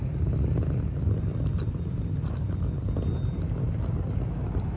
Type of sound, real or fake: fake